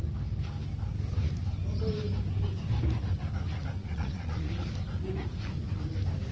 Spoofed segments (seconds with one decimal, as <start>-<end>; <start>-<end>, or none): 3.8-4.5